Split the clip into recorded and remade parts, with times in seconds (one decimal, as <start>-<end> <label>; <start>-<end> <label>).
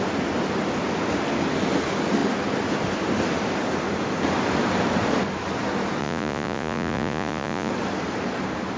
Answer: 0.0-6.0 recorded; 6.0-7.7 remade; 7.7-8.8 recorded